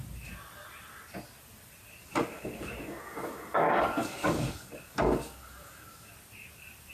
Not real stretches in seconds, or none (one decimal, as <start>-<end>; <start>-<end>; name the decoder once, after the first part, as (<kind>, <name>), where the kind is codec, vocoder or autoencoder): 2.0-6.1 (codec, DAC)